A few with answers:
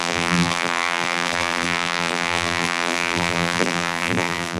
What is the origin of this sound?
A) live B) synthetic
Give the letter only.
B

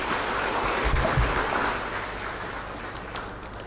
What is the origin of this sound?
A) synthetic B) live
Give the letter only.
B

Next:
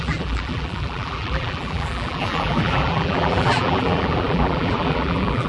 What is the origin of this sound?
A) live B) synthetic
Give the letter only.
B